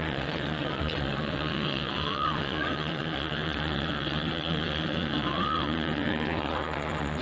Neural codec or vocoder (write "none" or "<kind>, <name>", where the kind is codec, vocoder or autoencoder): vocoder, WaveNeXt